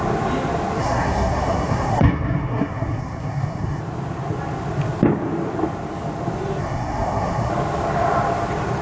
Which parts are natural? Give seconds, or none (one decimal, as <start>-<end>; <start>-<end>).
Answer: 0.0-0.8; 3.8-6.6; 7.5-8.8